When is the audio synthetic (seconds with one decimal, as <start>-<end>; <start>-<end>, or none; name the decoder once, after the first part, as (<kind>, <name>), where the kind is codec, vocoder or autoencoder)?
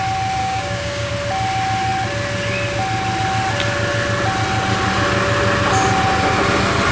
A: 0.4-1.1 (codec, DAC)